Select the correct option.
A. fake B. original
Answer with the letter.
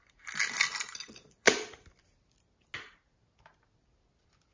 B